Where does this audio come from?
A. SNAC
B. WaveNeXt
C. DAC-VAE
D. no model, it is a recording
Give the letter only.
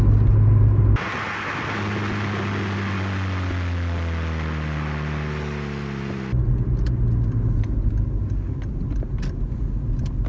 D